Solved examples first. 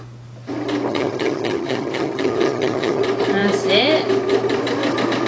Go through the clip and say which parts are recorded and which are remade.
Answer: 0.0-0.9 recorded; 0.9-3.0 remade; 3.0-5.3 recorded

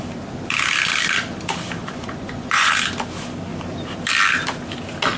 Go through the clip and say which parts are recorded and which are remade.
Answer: 0.0-1.8 recorded; 1.8-2.7 remade; 2.7-5.2 recorded

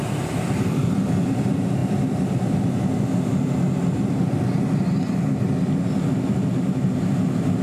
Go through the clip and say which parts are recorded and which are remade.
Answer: 0.0-1.2 remade; 1.2-7.6 recorded

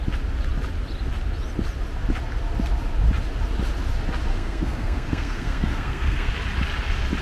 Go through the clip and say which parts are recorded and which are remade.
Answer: 0.0-4.3 recorded; 4.3-6.3 remade; 6.3-7.2 recorded

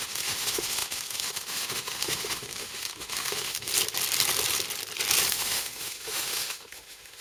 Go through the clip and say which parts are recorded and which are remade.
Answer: 0.0-3.7 remade; 3.7-5.3 recorded; 5.3-7.2 remade

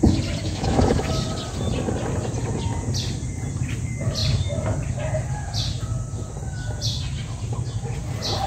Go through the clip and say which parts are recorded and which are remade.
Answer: 0.0-0.4 recorded; 0.4-1.1 remade; 1.1-8.5 recorded